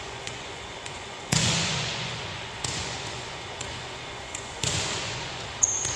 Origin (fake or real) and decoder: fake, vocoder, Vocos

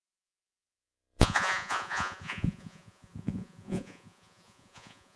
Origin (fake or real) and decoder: fake, vocoder, Vocos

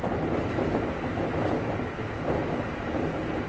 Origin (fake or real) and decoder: real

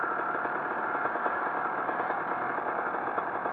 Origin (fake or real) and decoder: real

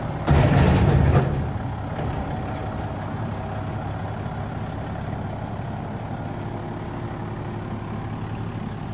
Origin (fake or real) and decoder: real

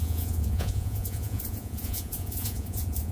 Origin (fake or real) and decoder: fake, vocoder, Vocos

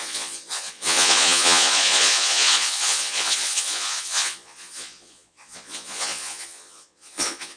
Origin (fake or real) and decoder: fake, vocoder, Vocos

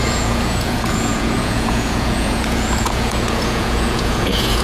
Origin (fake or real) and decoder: fake, vocoder, Vocos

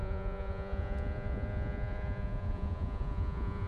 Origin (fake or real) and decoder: fake, vocoder, Vocos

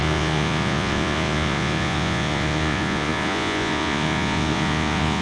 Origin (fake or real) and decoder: fake, vocoder, Vocos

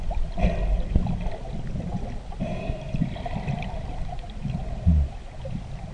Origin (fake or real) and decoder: real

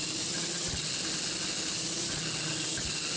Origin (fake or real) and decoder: real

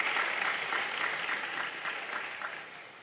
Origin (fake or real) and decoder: real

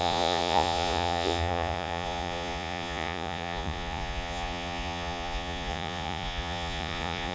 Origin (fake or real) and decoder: fake, vocoder, Vocos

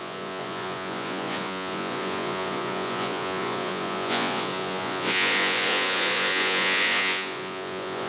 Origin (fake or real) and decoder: fake, vocoder, Vocos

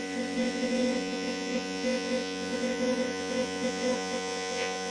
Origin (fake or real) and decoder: fake, vocoder, Vocos